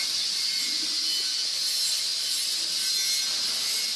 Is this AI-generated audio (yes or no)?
no